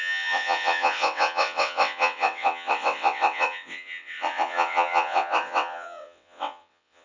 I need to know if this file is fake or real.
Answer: fake